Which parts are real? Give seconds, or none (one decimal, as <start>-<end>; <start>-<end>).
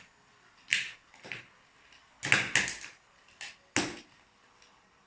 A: 0.0-5.1